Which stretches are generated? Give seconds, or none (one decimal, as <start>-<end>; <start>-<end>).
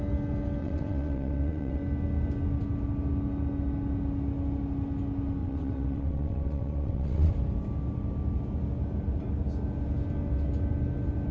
0.6-1.8; 5.4-7.3